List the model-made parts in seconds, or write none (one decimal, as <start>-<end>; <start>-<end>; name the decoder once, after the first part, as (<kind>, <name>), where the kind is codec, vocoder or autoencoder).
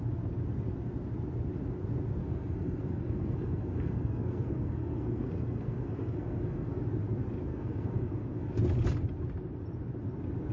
2.2-6.8 (codec, SNAC); 7.5-8.5